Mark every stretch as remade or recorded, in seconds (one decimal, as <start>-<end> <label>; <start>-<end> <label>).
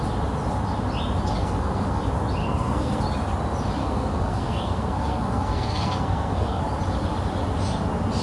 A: 0.0-1.4 recorded; 1.4-2.0 remade; 2.0-2.4 recorded; 2.4-3.0 remade; 3.0-3.8 recorded; 3.8-6.6 remade; 6.6-8.2 recorded